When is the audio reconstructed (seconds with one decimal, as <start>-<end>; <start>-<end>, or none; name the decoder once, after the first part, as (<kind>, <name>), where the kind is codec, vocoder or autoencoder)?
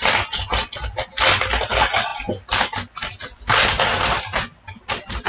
none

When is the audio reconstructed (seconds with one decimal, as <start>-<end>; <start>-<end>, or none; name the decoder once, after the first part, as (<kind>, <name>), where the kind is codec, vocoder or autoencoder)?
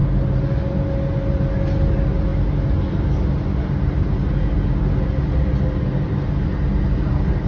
none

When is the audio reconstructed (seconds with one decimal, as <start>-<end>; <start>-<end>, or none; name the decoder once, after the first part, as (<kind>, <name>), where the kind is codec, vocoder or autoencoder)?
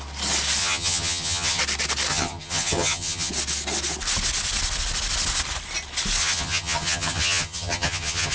0.6-1.6 (vocoder, HiFi-GAN); 2.1-3.3; 6.2-8.3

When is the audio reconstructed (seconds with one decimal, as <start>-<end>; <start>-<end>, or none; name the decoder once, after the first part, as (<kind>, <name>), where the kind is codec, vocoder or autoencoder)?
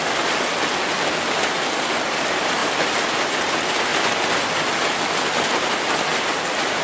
none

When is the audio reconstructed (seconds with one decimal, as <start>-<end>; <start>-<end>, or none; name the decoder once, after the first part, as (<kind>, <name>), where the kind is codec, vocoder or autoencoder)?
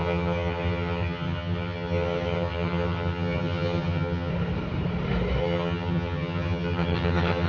0.0-4.3 (vocoder, HiFi-GAN); 5.4-7.5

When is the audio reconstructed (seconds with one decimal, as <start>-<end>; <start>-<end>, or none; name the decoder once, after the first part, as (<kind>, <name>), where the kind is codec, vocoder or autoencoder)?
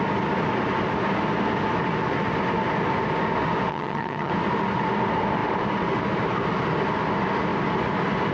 3.7-4.3 (vocoder, HiFi-GAN)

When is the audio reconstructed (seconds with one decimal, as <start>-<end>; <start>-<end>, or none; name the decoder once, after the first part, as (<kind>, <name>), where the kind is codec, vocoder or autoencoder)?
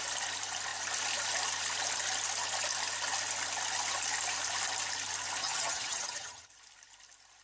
5.4-6.5 (vocoder, HiFi-GAN)